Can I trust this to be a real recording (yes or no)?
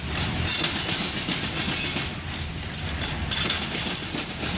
yes